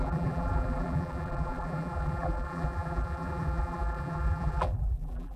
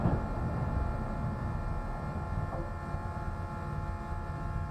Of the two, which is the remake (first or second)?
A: first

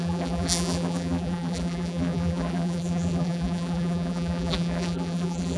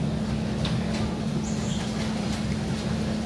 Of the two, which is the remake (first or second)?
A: first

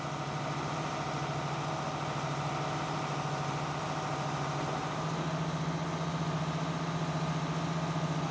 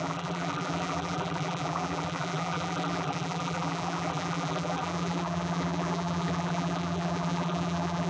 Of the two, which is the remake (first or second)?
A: second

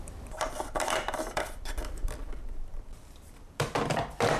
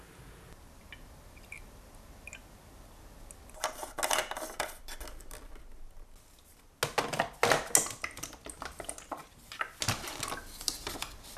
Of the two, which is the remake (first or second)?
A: first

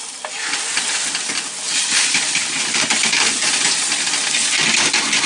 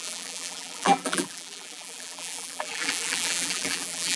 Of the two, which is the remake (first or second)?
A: second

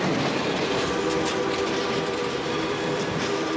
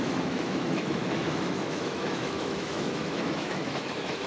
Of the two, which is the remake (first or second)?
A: second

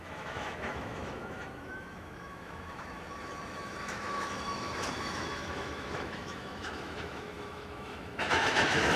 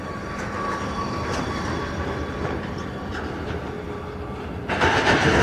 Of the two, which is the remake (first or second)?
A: first